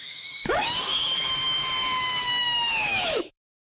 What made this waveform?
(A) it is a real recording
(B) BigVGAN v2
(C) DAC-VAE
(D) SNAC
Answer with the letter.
C